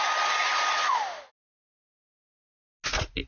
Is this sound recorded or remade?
recorded